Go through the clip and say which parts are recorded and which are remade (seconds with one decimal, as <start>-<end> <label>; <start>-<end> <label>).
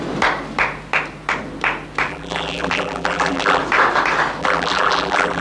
0.0-2.1 recorded; 2.1-3.6 remade; 3.6-4.4 recorded; 4.4-5.4 remade